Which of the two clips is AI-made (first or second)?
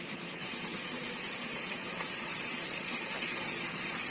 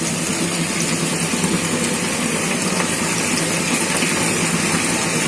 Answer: first